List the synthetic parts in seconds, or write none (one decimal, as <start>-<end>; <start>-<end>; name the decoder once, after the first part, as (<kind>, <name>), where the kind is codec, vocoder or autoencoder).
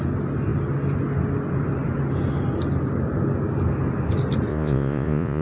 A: 4.5-5.4 (vocoder, Vocos)